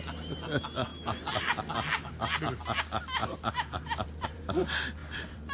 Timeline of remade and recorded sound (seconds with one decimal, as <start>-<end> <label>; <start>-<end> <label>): 0.0-3.2 recorded; 3.2-4.4 remade; 4.4-5.0 recorded; 5.0-5.5 remade